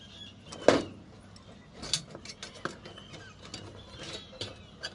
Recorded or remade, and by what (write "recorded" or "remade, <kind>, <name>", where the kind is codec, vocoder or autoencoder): recorded